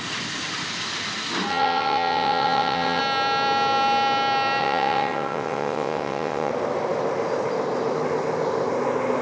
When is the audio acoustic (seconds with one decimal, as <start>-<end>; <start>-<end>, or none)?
0.0-1.5; 3.0-4.6; 6.5-9.2